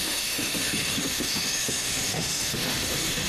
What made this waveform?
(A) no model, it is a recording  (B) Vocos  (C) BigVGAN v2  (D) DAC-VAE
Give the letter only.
D